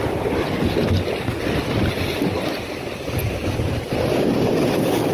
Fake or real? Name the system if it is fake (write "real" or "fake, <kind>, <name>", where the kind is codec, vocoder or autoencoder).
real